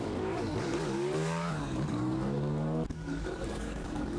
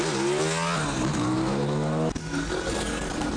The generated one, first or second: first